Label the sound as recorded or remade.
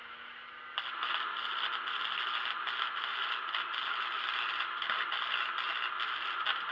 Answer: recorded